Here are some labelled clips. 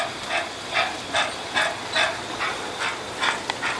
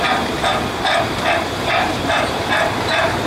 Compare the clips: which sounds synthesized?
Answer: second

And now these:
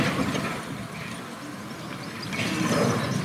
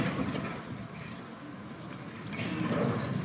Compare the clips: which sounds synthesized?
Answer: first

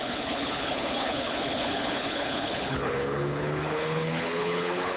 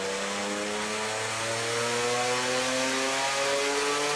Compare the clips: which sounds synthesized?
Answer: first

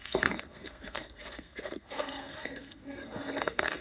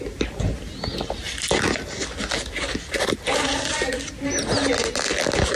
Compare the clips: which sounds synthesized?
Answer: first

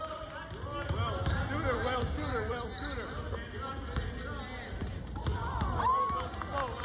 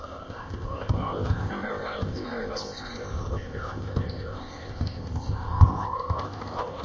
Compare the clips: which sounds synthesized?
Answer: second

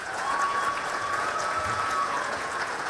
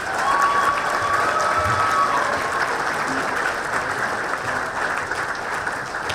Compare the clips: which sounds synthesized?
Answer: first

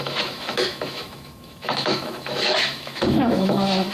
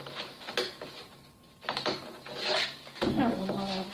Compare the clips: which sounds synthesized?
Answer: first